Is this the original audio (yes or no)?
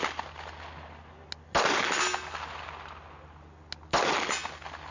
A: yes